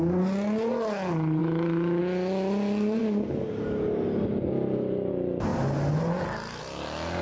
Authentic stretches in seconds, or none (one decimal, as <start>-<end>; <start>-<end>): 0.0-1.4; 2.0-7.2